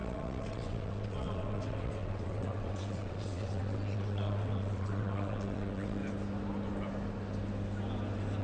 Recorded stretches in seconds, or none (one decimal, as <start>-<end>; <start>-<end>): 6.0-8.4